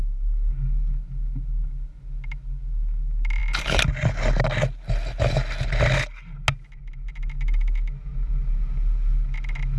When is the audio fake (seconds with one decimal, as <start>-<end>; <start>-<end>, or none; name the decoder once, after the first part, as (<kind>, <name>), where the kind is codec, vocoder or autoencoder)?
none